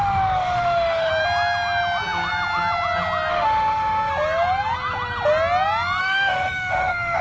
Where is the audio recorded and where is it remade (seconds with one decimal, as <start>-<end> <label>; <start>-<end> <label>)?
0.0-1.1 remade; 1.1-3.3 recorded; 3.3-4.1 remade; 4.1-6.0 recorded; 6.0-7.2 remade